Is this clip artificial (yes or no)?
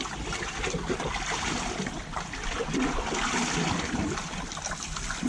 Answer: no